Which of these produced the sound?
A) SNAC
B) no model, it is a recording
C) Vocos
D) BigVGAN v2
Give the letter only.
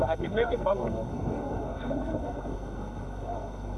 A